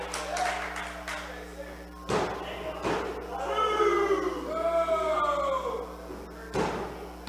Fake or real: real